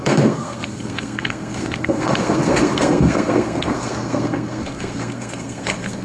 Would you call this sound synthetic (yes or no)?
yes